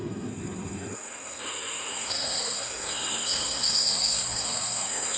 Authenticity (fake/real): fake